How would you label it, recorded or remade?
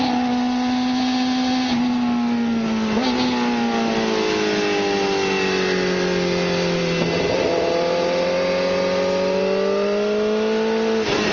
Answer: recorded